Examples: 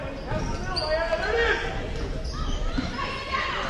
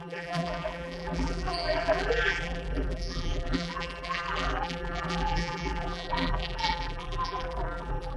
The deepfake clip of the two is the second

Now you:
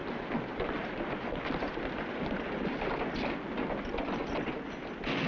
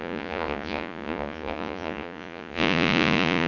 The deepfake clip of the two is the second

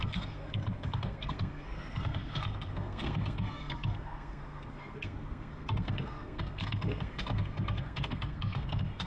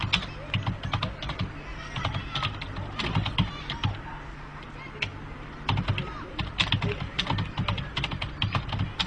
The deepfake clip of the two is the first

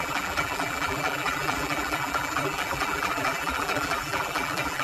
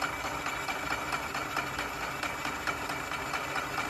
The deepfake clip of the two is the first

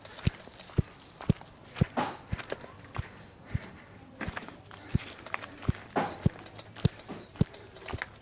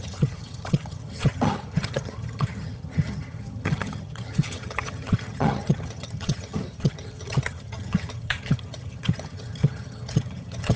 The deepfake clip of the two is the second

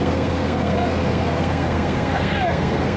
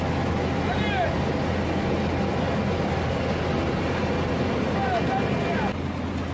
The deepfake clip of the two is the first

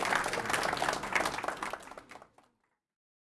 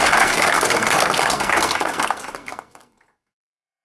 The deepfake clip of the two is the second